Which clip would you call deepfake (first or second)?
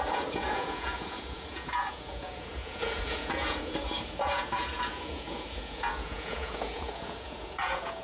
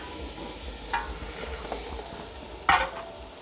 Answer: first